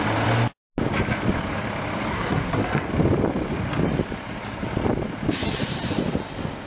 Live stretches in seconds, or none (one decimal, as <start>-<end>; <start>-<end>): 0.0-2.1; 2.9-6.7